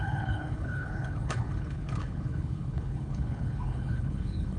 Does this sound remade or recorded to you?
remade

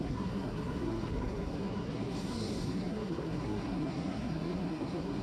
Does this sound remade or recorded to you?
remade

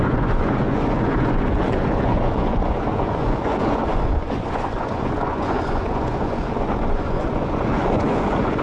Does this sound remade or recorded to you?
remade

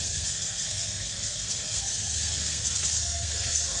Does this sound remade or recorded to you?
remade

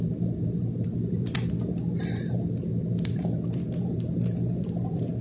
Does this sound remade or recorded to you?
remade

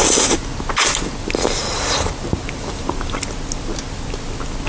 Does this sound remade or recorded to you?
recorded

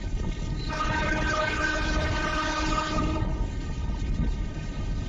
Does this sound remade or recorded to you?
remade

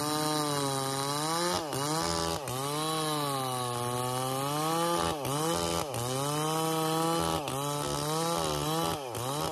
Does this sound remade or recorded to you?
recorded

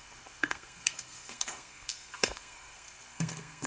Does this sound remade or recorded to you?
remade